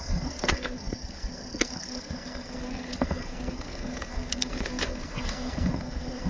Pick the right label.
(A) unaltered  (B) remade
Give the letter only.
B